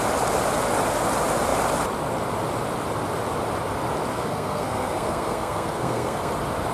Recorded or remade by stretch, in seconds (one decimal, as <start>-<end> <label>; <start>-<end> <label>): 0.0-4.1 recorded; 4.1-6.3 remade; 6.3-6.7 recorded